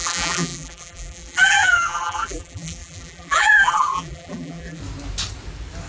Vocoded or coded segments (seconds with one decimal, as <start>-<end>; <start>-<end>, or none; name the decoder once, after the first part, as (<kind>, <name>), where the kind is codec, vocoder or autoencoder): 0.0-4.8 (vocoder, BigVGAN v2)